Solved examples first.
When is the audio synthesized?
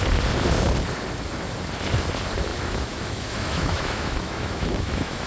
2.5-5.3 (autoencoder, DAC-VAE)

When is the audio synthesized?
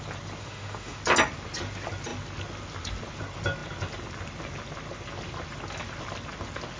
0.4-1.0 (autoencoder, DAC-VAE)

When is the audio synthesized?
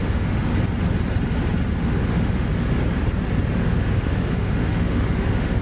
0.0-0.5 (autoencoder, DAC-VAE); 1.8-2.5; 3.5-5.6